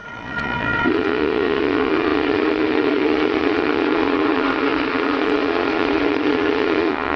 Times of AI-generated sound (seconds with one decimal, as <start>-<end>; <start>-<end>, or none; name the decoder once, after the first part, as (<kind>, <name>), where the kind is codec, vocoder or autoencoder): 0.0-7.2 (vocoder, Vocos)